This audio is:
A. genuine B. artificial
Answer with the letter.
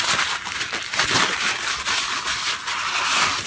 A